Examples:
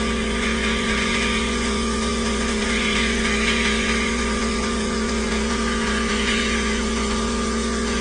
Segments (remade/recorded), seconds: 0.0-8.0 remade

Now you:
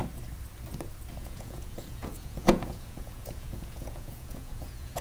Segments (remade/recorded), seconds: 0.0-1.2 recorded; 1.2-5.0 remade

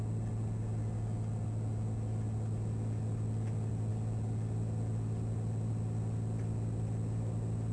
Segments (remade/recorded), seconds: 0.0-7.7 recorded

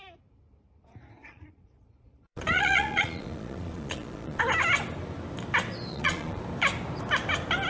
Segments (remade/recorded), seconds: 0.0-1.2 recorded; 1.2-4.4 remade; 4.4-5.9 recorded; 5.9-6.4 remade; 6.4-7.7 recorded

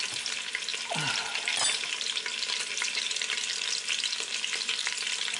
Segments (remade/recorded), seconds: 0.0-5.4 recorded

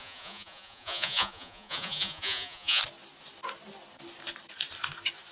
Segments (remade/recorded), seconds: 0.0-2.8 remade; 2.8-5.3 recorded

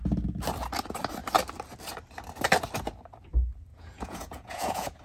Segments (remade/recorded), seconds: 0.0-3.7 recorded; 3.7-5.0 remade

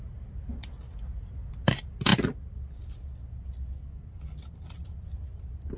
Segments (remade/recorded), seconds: 0.0-5.8 recorded